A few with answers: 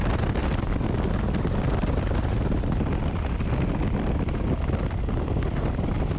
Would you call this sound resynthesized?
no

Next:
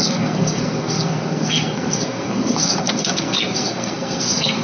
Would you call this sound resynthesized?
yes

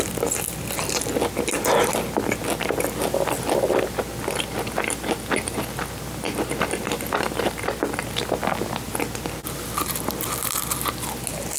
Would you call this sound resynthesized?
no